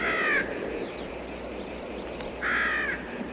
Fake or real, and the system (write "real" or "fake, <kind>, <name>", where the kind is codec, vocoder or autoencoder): real